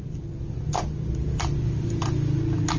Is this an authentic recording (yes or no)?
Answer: yes